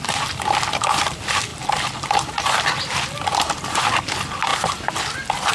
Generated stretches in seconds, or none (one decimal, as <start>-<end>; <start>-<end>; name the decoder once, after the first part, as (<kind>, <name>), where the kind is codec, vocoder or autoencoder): none